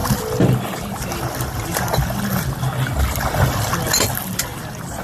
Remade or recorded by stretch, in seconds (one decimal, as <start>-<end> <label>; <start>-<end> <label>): 0.0-5.0 recorded